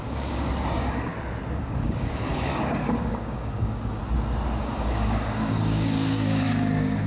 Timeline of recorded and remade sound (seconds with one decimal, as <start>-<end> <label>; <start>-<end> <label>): 0.0-1.1 remade; 1.1-1.6 recorded; 1.6-4.0 remade; 4.0-4.6 recorded; 4.6-7.1 remade